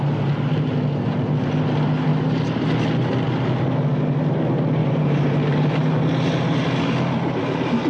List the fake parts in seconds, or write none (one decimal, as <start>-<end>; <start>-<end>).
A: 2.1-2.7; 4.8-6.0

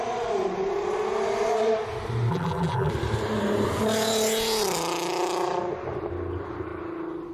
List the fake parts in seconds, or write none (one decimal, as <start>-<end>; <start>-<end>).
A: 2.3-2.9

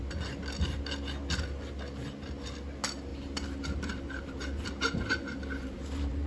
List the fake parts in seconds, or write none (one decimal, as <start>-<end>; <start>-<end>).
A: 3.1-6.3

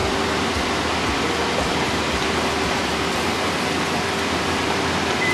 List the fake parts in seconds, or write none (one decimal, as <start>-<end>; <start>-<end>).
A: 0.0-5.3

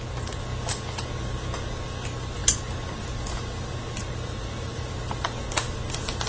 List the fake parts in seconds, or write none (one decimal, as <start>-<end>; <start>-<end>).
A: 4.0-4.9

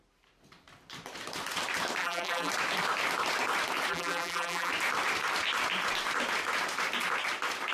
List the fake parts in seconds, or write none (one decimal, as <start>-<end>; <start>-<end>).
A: 2.0-2.5; 3.9-4.7